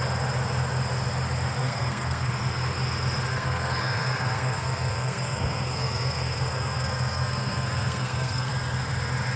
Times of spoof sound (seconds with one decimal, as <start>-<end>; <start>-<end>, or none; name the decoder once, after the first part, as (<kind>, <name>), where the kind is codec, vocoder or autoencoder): 1.6-2.3 (codec, SNAC); 3.3-8.5